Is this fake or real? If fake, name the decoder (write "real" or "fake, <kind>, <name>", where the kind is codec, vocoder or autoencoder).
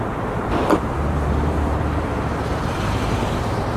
fake, vocoder, BigVGAN v2